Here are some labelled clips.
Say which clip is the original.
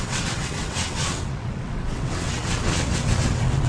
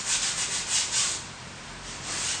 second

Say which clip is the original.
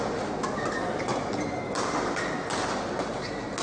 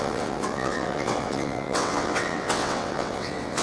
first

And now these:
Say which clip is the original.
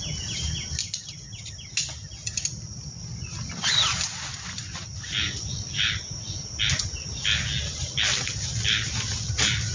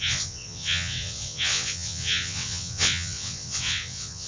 first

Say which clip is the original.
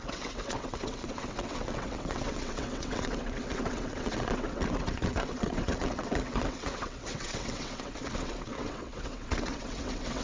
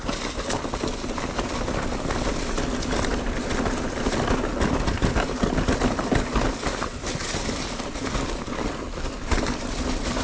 second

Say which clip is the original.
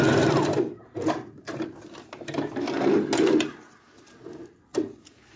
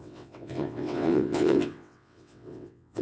first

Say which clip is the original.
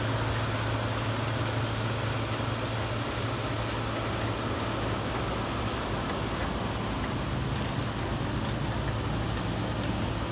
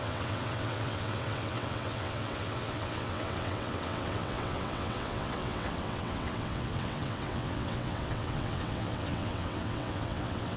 first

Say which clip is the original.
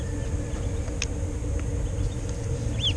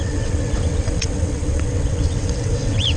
first